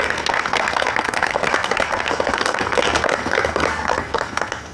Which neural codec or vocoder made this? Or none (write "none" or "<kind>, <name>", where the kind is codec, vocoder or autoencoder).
codec, SNAC